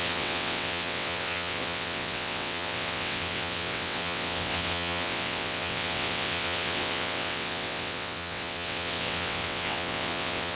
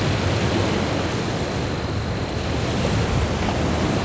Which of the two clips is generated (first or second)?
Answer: first